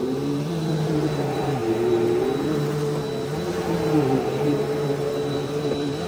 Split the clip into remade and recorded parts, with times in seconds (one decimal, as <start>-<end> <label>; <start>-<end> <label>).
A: 0.0-1.6 remade; 1.6-5.3 recorded; 5.3-6.1 remade